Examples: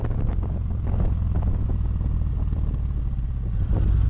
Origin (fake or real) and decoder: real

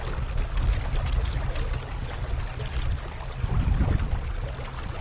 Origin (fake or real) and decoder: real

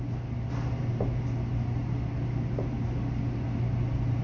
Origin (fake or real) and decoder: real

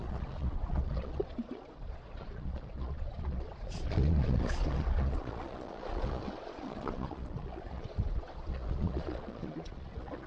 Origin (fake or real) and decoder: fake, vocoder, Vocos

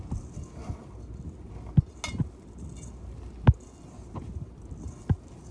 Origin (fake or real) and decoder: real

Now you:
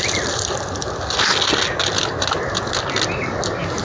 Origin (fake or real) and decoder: real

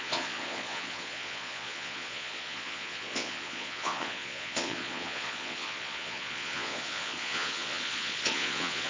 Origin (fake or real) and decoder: fake, vocoder, Vocos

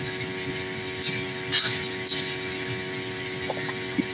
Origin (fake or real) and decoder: real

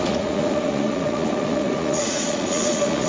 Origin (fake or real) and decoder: fake, vocoder, Vocos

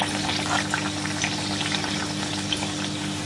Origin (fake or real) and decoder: real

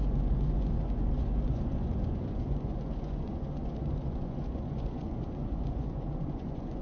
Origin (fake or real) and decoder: fake, vocoder, Vocos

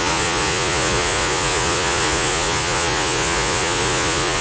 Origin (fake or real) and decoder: fake, vocoder, Vocos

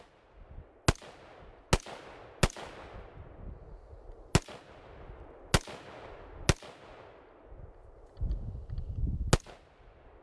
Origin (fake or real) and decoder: real